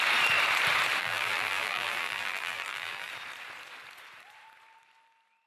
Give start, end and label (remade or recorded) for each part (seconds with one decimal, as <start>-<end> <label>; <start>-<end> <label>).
0.0-1.0 recorded; 1.0-3.1 remade; 3.1-5.5 recorded